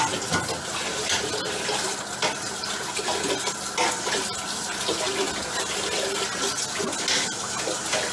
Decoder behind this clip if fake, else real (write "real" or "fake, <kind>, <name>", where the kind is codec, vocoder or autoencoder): real